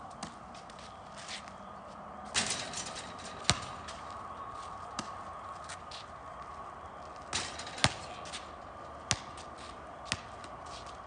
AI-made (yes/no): no